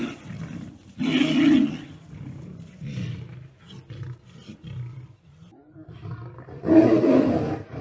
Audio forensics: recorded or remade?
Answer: recorded